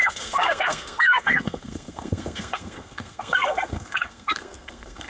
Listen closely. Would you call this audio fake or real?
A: fake